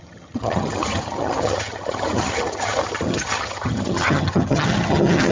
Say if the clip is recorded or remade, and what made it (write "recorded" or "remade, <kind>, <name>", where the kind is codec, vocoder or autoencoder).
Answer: remade, vocoder, HiFi-GAN